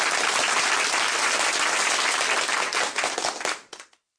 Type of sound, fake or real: real